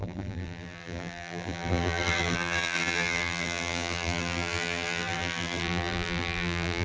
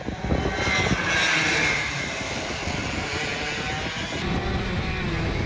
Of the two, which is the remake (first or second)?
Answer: first